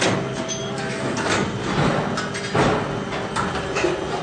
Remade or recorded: recorded